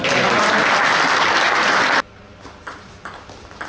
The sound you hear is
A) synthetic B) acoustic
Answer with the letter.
B